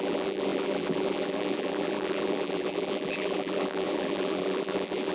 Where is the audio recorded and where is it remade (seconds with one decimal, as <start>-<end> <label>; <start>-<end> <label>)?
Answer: 0.0-5.1 remade